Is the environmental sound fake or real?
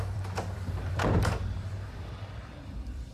fake